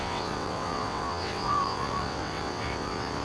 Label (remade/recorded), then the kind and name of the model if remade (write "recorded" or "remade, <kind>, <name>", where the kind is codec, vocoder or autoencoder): remade, vocoder, WaveNeXt